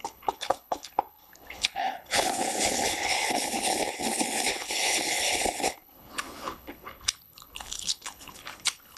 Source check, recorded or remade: remade